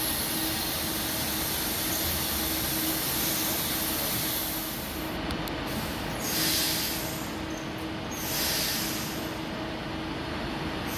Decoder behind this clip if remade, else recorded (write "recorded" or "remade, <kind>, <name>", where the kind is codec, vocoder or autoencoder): recorded